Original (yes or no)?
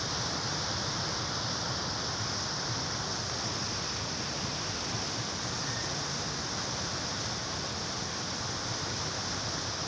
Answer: yes